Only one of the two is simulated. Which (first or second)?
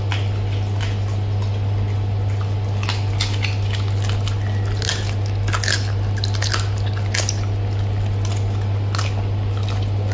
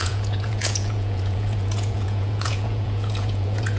second